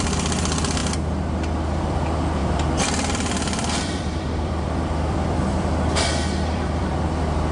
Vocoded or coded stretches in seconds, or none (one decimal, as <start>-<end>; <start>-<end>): 2.4-6.9